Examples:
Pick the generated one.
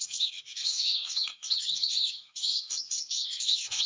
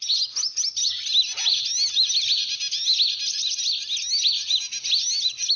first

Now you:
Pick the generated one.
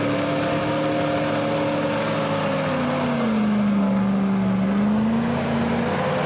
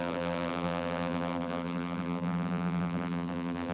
second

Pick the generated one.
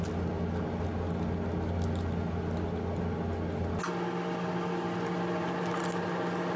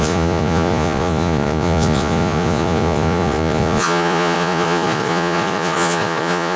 second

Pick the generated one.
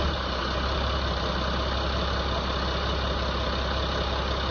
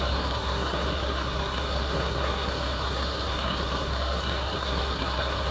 second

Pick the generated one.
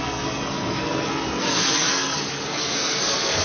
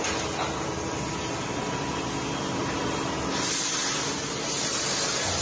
first